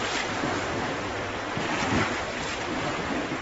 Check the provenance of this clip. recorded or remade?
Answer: recorded